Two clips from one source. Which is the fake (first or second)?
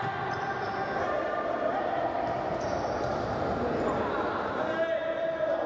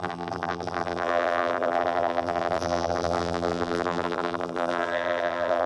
second